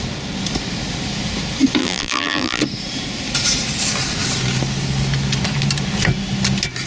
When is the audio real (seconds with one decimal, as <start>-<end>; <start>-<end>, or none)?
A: 0.0-1.8; 2.6-6.9